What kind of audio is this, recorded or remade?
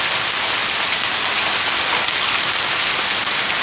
recorded